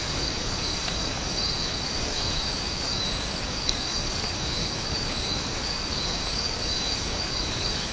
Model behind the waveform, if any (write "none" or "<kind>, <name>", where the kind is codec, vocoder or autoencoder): codec, DAC